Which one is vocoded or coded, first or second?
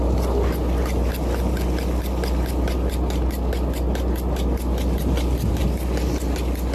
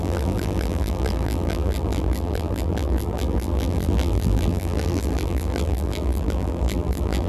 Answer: second